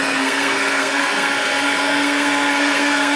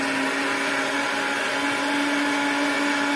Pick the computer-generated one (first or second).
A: first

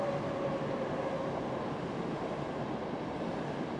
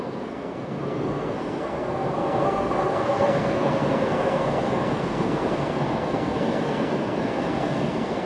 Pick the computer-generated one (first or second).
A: second